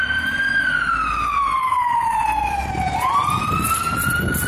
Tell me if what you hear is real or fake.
real